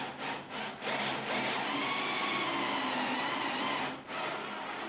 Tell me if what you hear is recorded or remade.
recorded